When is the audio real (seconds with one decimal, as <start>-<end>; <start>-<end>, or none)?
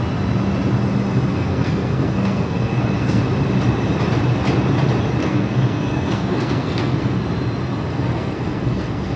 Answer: 0.0-1.3; 3.2-5.2; 7.2-7.9